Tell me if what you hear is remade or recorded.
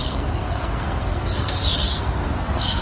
remade